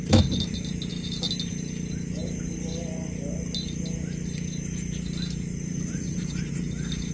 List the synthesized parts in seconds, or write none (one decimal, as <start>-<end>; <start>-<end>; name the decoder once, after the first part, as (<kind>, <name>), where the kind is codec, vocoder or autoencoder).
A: none